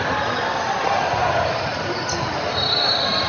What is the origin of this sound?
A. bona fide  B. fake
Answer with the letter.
A